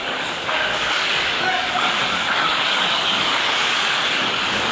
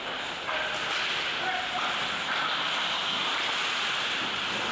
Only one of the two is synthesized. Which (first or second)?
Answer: first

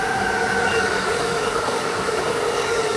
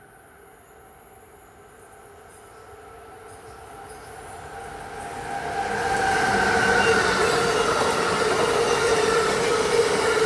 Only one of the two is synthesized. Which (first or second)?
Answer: first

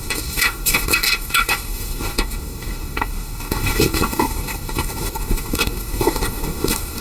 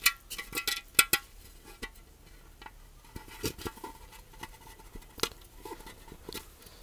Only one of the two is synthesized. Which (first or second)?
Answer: first